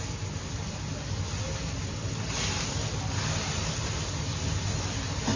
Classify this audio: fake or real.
real